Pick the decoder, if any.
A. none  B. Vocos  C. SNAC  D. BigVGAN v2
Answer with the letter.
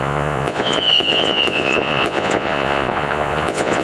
B